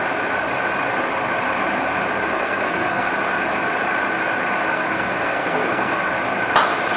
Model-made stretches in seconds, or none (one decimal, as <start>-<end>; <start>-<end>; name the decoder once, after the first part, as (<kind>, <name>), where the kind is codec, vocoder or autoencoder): 2.3-3.1 (codec, SNAC); 4.7-6.0